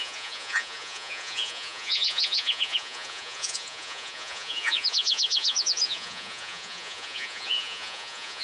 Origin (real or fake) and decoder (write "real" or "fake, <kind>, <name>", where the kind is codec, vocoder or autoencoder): fake, vocoder, Vocos